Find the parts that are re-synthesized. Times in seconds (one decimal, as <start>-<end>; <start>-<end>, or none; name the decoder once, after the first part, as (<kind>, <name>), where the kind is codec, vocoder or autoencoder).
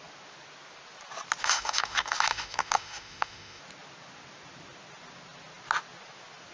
1.4-3.6 (autoencoder, DAC-VAE)